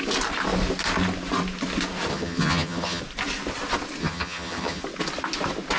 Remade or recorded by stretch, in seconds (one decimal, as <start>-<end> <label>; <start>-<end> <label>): 0.0-2.1 recorded; 2.1-3.0 remade; 3.0-4.0 recorded; 4.0-4.8 remade; 4.8-5.8 recorded